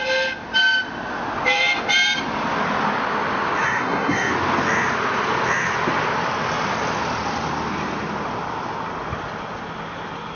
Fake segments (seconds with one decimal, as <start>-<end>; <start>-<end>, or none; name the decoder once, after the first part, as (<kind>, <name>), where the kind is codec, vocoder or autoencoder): 3.6-4.3 (codec, SNAC)